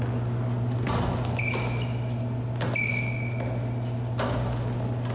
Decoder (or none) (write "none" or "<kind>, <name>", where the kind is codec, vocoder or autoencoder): none